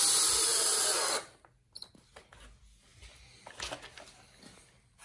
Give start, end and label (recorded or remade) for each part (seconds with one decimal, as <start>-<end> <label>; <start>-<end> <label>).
0.0-5.0 recorded